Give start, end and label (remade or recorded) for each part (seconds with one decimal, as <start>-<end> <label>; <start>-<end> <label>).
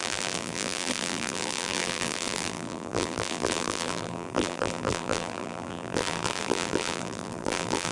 0.0-7.9 remade